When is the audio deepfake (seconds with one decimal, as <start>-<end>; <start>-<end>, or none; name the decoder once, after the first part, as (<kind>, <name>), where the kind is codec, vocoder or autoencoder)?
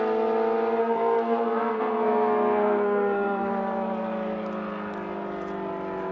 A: 0.8-3.5 (codec, SNAC)